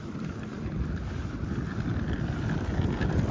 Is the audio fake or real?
real